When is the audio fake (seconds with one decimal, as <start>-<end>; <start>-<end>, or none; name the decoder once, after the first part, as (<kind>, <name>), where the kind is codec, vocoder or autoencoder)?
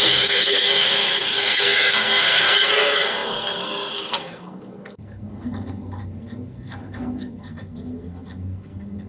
0.0-9.1 (codec, SNAC)